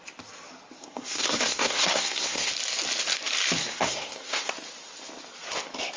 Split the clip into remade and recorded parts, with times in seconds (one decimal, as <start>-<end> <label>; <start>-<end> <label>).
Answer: 0.0-0.8 recorded; 0.8-2.5 remade; 2.5-3.6 recorded; 3.6-4.5 remade; 4.5-6.0 recorded